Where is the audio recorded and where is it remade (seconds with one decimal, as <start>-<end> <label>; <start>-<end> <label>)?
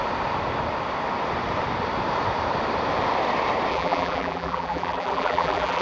0.0-3.7 recorded; 3.7-5.8 remade